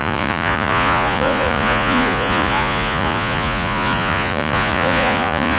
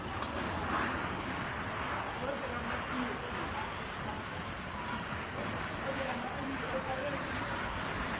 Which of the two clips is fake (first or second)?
first